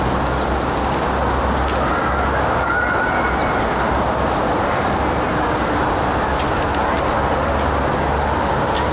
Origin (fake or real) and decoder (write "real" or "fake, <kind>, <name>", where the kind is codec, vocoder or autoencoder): real